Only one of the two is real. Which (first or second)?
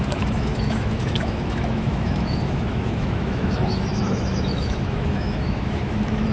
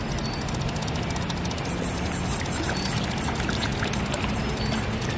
second